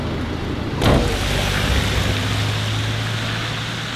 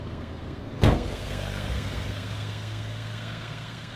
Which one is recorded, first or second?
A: first